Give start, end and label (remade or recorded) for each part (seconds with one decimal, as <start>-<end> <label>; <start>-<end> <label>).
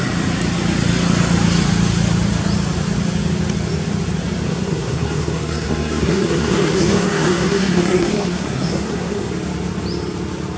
0.0-4.5 recorded; 4.5-9.3 remade; 9.3-10.6 recorded